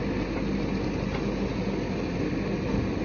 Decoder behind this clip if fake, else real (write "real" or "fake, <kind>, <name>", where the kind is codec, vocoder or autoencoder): real